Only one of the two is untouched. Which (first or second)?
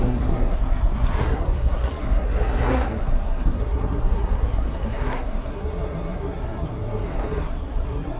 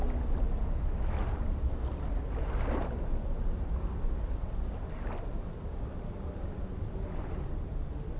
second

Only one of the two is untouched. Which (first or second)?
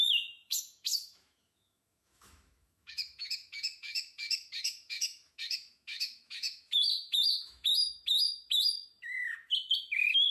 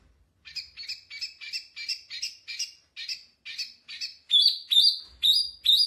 second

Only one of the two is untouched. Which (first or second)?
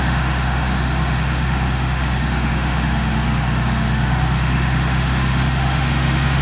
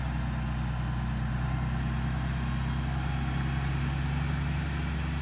second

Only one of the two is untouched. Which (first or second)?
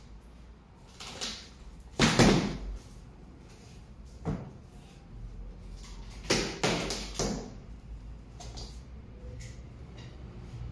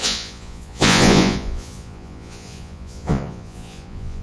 first